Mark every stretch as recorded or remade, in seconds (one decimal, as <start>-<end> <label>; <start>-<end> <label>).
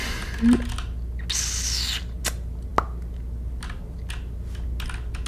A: 0.0-5.3 recorded